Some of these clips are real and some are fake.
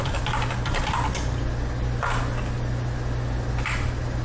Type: real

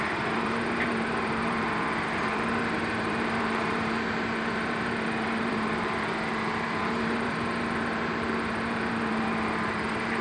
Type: fake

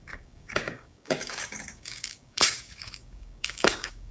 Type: fake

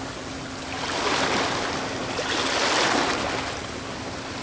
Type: real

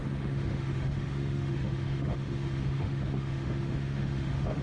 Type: fake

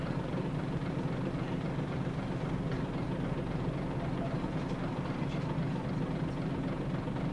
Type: fake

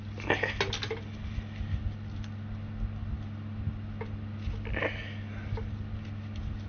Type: real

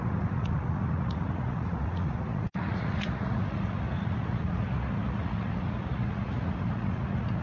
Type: fake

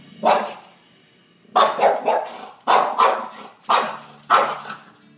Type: real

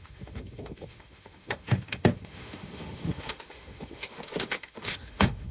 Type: fake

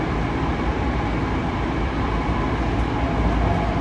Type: real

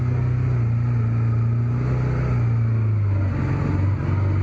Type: real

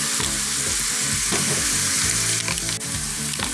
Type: real